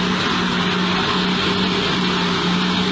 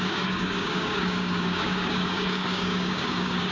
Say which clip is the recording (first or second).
first